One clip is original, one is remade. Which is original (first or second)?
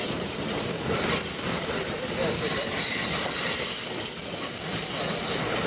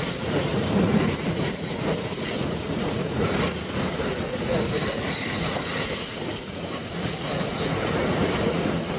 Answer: first